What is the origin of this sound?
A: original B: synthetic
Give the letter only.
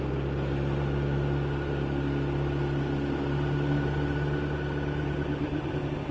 A